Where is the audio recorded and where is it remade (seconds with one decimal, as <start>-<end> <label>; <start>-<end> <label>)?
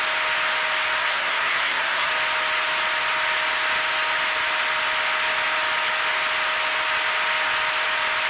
0.0-1.0 recorded; 1.0-2.1 remade; 2.1-8.3 recorded